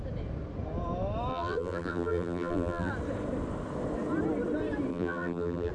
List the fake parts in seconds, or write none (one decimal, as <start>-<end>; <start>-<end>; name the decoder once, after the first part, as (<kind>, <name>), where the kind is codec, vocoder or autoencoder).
1.3-2.9 (vocoder, BigVGAN v2); 4.9-5.7